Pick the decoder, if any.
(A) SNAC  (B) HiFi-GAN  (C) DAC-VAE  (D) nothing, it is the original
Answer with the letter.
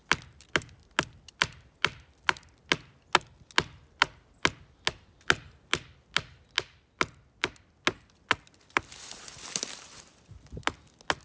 D